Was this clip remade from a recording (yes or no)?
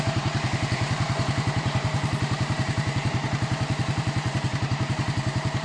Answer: yes